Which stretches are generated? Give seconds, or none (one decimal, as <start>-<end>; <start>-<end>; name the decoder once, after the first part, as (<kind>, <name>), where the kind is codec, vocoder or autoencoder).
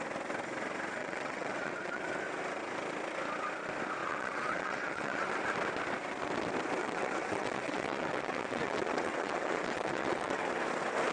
1.0-2.0 (vocoder, WaveNeXt); 4.0-5.3; 6.8-10.4